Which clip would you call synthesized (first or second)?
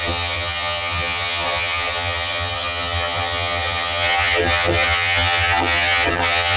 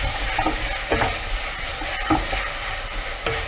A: first